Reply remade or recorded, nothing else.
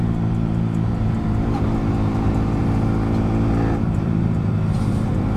remade